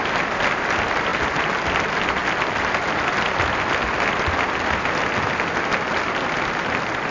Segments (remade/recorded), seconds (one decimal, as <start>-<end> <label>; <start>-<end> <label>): 0.0-7.1 recorded